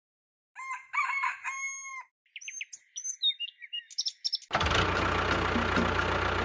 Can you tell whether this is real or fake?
real